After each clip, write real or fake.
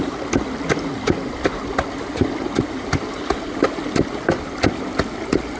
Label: real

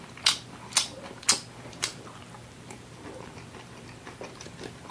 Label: fake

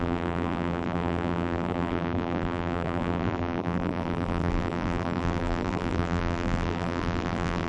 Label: fake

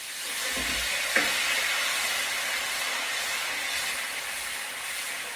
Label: real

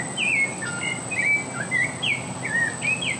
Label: real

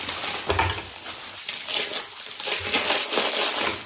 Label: real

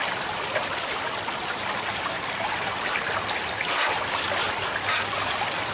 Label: real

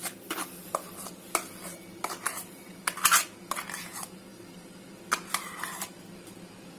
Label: real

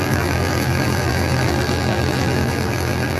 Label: fake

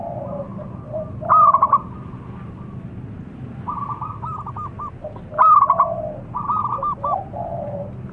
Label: real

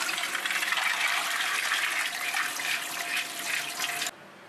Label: real